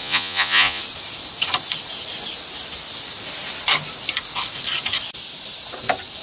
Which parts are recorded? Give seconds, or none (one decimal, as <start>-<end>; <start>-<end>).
0.8-6.2